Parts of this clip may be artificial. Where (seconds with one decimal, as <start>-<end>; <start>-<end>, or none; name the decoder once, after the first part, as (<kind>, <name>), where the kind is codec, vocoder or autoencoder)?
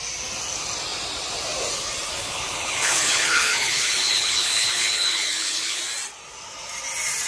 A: 2.2-5.8 (codec, HILCodec)